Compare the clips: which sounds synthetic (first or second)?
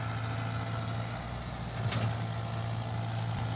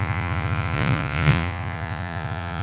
second